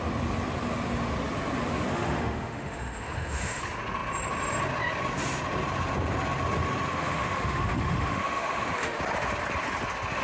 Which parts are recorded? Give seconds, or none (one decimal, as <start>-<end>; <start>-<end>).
0.0-1.9; 3.6-6.9; 9.0-10.2